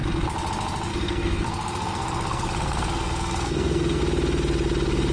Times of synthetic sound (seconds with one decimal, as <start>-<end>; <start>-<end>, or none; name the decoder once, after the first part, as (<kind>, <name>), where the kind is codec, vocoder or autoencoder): 0.9-4.0 (codec, SNAC)